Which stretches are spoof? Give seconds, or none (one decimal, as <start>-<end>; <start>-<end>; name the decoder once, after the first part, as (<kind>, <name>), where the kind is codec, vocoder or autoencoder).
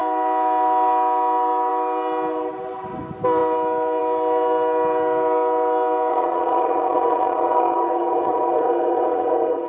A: 6.1-9.7 (vocoder, HiFi-GAN)